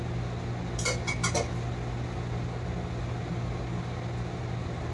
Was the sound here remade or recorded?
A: recorded